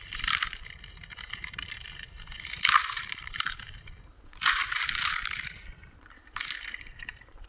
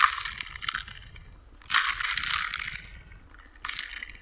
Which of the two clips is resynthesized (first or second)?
first